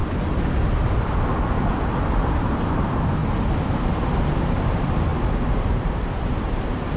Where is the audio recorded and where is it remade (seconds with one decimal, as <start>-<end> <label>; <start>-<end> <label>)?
0.0-1.7 recorded; 1.7-3.2 remade; 3.2-3.9 recorded; 3.9-7.0 remade